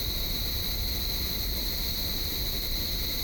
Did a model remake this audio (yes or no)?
no